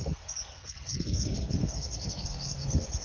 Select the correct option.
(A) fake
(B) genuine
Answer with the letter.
A